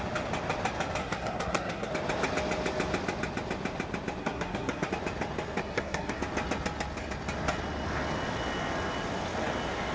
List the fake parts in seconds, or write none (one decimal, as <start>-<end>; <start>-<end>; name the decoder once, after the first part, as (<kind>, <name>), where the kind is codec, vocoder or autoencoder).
1.0-1.9 (codec, SNAC); 4.2-4.9; 5.6-6.2